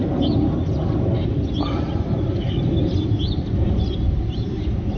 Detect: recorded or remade recorded